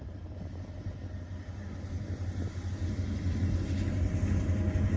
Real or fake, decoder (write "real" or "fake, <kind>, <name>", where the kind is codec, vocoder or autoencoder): real